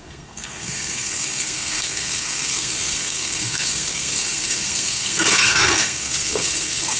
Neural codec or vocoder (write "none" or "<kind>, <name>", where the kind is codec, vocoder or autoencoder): codec, SNAC